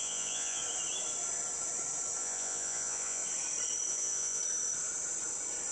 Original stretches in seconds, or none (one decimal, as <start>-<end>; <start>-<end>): 0.6-2.2; 3.2-3.9; 4.4-5.7